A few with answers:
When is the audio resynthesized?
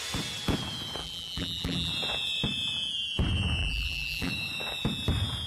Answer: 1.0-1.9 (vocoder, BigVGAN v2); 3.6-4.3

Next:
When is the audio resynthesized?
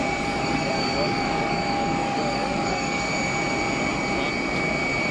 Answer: 0.0-3.1 (codec, DAC)